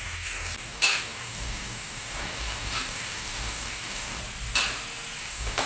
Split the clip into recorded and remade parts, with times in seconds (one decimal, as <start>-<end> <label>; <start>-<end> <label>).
0.0-4.2 remade; 4.2-5.2 recorded; 5.2-5.7 remade